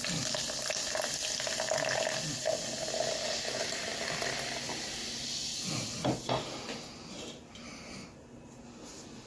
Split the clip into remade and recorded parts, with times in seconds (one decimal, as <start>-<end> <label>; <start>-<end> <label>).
0.0-9.3 recorded